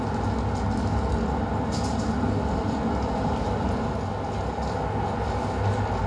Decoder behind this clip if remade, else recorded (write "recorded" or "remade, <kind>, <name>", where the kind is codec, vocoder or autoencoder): recorded